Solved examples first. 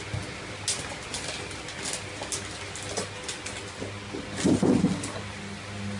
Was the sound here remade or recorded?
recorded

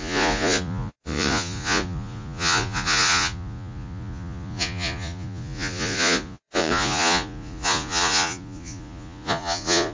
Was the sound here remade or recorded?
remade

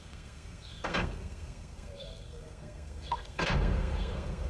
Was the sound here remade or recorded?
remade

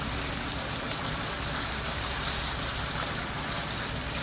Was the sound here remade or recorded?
recorded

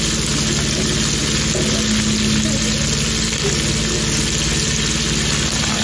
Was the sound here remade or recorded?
recorded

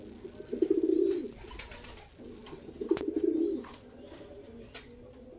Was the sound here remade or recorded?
recorded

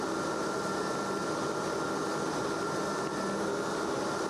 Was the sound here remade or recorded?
recorded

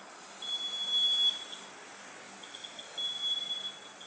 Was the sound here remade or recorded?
recorded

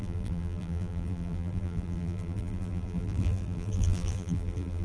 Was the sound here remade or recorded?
remade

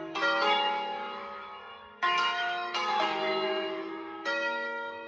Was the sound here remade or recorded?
remade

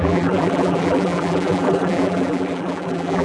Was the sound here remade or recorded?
remade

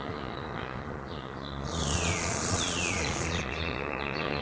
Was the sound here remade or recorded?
remade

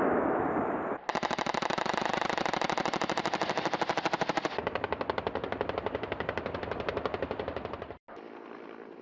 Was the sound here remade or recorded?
recorded